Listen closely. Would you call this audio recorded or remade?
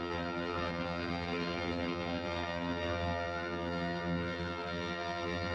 remade